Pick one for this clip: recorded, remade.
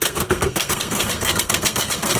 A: remade